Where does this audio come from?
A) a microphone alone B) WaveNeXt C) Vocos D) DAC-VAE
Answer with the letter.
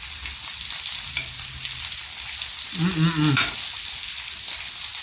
A